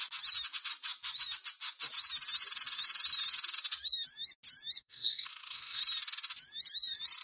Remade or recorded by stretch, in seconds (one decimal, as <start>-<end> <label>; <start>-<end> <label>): 0.0-4.8 recorded; 4.8-5.8 remade; 5.8-7.2 recorded